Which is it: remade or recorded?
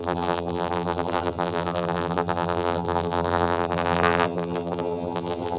remade